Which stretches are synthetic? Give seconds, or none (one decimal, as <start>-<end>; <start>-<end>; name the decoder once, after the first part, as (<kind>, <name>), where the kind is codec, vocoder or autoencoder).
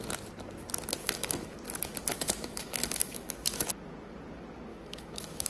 1.0-1.6 (autoencoder, DAC-VAE); 2.1-3.7; 4.7-5.5